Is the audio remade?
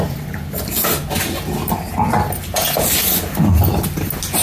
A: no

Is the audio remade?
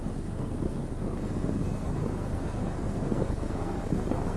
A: yes